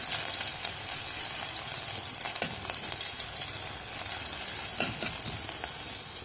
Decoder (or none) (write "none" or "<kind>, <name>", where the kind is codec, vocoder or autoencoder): none